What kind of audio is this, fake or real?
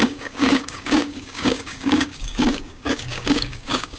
fake